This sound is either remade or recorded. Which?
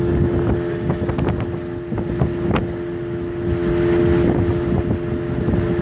recorded